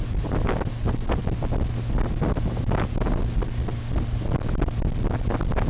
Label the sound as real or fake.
real